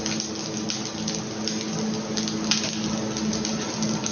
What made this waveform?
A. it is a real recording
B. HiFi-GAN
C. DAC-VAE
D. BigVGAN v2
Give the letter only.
A